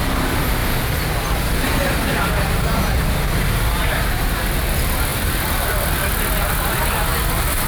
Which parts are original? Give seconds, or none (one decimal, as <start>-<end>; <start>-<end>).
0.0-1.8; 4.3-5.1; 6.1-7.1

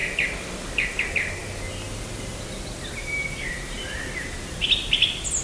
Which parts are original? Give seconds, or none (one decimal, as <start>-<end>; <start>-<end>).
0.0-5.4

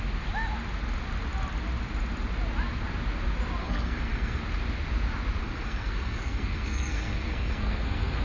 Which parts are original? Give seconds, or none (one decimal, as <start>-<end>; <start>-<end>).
0.0-3.6; 4.4-5.4

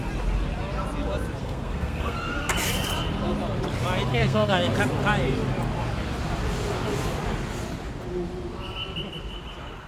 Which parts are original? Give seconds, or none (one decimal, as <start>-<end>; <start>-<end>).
0.0-1.4; 2.5-4.1; 4.7-9.9

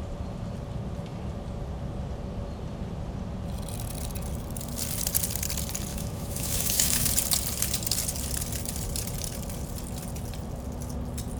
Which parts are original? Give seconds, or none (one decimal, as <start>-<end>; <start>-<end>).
0.0-5.9; 7.1-11.4

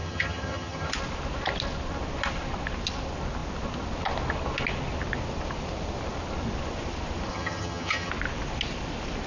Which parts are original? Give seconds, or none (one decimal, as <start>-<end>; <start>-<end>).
0.9-7.3; 8.1-9.3

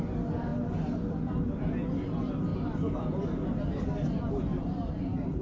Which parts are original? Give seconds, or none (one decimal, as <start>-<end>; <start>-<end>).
0.0-5.4